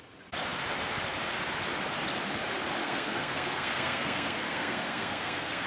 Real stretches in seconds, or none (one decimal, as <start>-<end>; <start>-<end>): 0.0-2.8